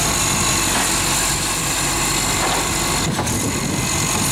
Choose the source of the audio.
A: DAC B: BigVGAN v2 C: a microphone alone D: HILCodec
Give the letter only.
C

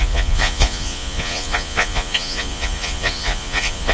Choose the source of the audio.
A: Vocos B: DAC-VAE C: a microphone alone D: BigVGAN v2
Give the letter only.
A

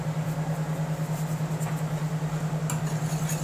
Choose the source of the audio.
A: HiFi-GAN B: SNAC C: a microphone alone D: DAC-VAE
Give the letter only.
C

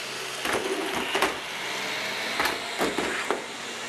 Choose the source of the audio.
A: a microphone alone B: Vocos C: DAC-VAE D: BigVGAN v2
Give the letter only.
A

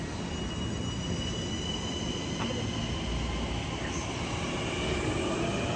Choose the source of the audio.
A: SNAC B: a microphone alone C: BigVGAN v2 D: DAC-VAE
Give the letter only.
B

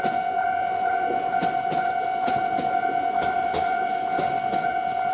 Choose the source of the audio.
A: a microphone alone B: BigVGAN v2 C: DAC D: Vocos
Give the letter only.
A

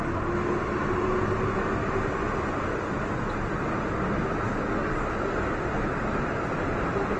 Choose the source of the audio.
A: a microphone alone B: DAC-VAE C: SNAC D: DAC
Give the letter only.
A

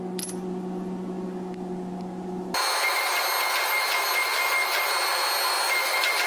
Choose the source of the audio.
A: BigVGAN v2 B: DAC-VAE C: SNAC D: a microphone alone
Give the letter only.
D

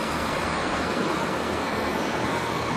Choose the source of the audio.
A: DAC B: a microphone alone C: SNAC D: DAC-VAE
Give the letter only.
C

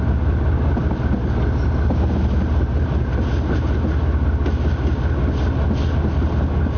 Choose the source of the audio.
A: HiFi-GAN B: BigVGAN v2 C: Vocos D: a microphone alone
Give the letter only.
D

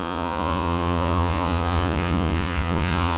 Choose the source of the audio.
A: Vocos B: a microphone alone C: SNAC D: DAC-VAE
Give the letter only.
A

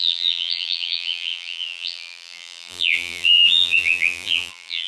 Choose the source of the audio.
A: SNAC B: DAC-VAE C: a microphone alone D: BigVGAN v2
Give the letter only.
D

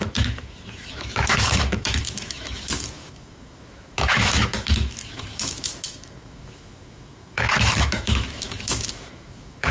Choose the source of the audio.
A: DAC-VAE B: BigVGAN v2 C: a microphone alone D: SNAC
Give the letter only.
A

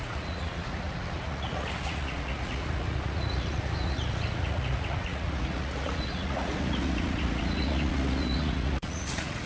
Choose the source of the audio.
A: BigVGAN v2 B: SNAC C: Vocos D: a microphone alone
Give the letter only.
C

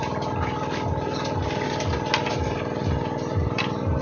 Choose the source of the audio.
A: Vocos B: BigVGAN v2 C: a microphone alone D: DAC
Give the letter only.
C